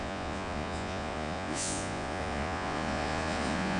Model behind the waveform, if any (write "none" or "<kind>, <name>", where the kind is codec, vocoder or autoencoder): vocoder, Vocos